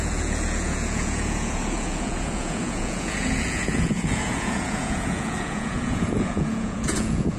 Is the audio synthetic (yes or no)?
yes